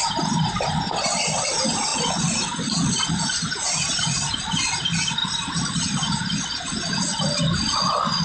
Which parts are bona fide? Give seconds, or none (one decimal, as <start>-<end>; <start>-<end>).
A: 0.0-8.2